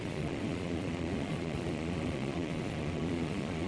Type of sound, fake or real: fake